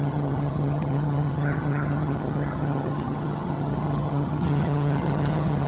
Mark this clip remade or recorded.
remade